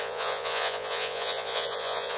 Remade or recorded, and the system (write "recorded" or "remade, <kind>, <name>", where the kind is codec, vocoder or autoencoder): remade, vocoder, Vocos